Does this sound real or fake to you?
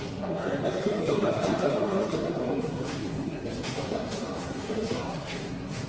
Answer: fake